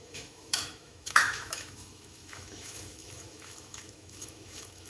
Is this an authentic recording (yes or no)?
no